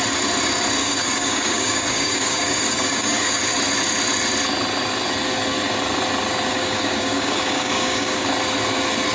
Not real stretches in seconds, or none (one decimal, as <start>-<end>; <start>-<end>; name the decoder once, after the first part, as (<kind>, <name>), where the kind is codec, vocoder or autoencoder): 0.8-3.4 (codec, DAC); 6.5-8.3